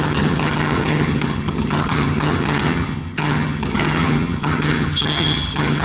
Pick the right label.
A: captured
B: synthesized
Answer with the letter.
B